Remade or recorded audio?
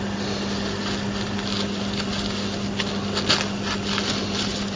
recorded